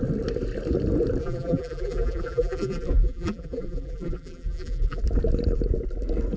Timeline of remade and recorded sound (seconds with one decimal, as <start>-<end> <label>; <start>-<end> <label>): 0.0-1.2 recorded; 1.2-5.0 remade; 5.0-6.4 recorded